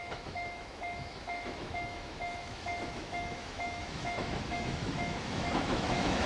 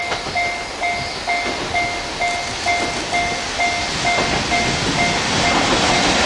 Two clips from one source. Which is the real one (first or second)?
second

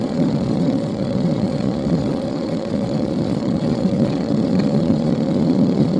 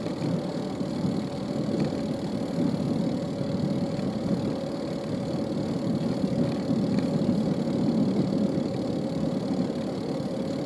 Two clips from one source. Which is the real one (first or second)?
second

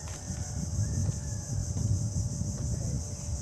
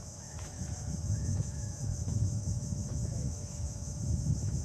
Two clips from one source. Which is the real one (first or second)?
first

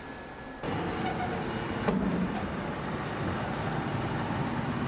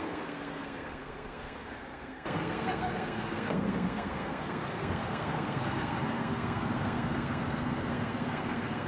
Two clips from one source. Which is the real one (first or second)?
first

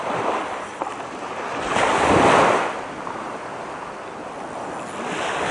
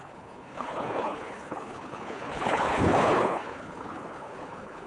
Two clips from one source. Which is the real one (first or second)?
first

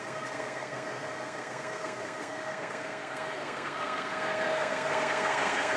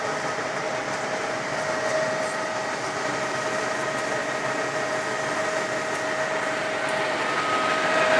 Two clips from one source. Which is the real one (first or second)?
second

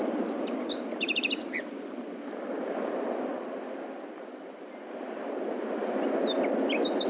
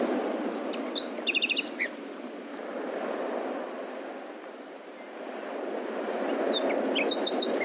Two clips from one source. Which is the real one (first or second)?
second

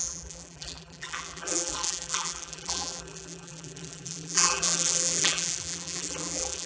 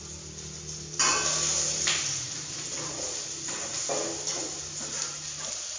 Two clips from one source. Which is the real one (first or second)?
second